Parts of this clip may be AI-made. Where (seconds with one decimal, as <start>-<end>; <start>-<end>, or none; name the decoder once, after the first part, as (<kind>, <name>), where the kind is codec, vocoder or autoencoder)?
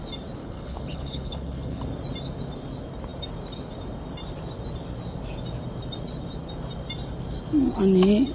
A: 0.4-1.8 (codec, HILCodec)